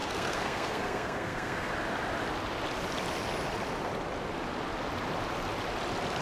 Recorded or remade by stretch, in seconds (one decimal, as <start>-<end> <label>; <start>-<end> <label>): 0.0-1.7 remade; 1.7-6.2 recorded